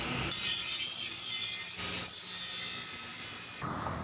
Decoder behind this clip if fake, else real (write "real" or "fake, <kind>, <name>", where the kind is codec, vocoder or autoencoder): real